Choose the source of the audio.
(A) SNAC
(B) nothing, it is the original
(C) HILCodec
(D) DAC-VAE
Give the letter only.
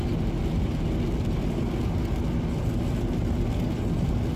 B